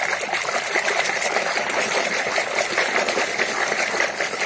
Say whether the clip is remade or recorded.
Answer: recorded